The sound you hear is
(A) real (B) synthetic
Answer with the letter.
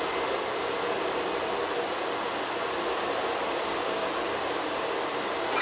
A